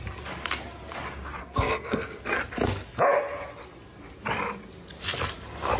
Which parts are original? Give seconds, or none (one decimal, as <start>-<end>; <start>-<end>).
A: 0.0-1.4; 2.4-5.8